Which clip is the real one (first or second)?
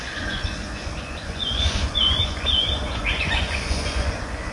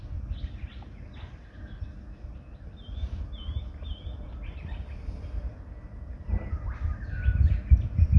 second